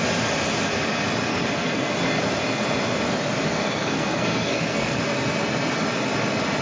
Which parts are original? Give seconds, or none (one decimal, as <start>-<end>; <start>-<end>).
0.0-1.3; 1.9-3.5; 5.0-6.6